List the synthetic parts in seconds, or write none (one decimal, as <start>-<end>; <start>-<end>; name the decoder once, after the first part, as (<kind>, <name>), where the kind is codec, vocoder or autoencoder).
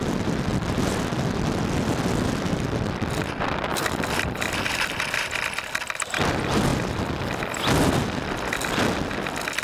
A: 3.7-5.4 (vocoder, BigVGAN v2)